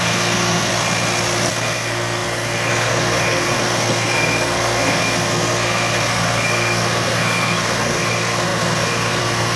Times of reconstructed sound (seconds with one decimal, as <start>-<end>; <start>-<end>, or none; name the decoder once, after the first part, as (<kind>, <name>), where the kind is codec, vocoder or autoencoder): 0.0-0.7 (codec, SNAC); 1.5-9.6